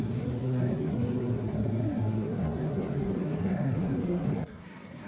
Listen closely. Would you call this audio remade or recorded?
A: remade